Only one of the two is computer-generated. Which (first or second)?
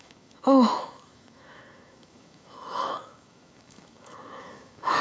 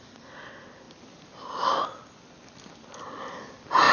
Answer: first